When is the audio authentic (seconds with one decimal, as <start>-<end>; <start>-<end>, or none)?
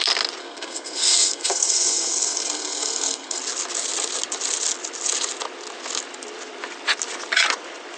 0.0-0.4; 3.4-8.0